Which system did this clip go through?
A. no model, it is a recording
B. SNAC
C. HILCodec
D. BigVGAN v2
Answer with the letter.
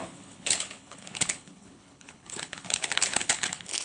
C